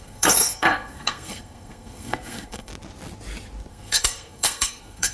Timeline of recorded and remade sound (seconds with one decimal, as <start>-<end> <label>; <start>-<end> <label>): 0.0-2.7 remade; 2.7-3.7 recorded; 3.7-5.1 remade